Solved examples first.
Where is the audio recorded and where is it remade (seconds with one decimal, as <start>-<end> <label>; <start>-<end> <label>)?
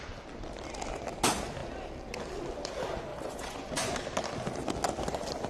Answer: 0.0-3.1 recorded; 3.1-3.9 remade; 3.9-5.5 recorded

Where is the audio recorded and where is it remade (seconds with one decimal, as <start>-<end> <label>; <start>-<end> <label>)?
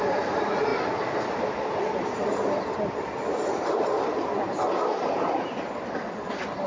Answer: 0.0-6.7 recorded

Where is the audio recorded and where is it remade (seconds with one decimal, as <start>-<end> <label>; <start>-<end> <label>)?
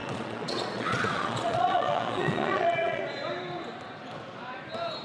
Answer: 0.0-3.0 remade; 3.0-5.0 recorded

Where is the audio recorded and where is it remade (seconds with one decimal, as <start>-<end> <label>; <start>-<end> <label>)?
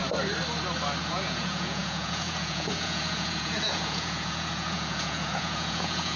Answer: 0.0-1.0 recorded; 1.0-6.2 remade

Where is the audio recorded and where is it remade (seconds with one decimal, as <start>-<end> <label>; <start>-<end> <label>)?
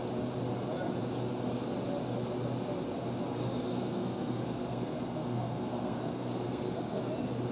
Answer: 0.0-3.7 recorded; 3.7-7.0 remade; 7.0-7.5 recorded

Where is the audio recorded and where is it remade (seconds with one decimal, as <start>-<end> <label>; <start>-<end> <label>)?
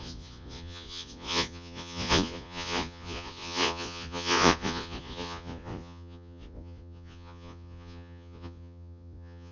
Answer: 0.0-9.5 remade